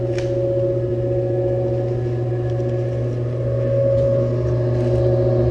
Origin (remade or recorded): recorded